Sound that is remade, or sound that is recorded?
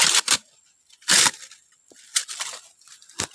recorded